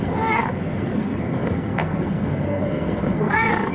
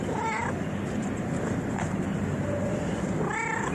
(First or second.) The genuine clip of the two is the second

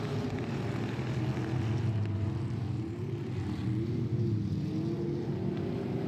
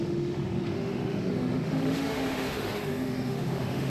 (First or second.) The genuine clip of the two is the first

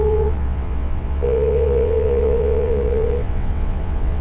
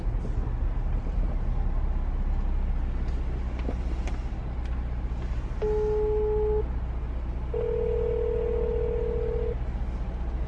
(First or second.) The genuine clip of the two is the second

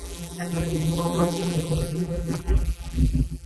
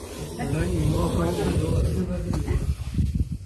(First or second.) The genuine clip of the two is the second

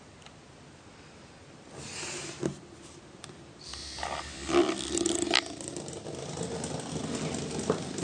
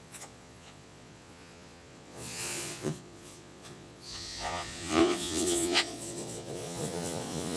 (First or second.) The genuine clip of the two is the first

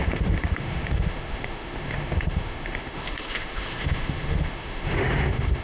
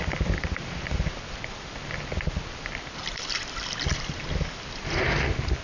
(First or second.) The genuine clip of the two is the second